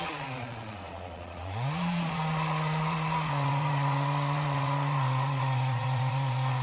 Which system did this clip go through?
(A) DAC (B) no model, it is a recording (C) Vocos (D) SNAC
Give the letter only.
C